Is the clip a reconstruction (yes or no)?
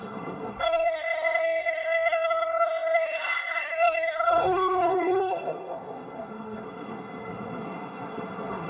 yes